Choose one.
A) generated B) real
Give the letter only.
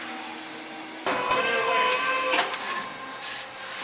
B